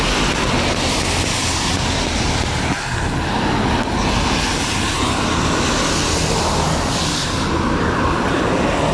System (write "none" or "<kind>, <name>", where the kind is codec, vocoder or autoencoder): none